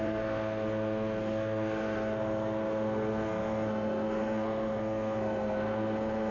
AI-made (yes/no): yes